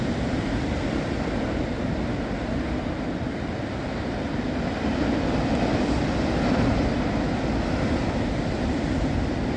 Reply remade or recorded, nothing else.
recorded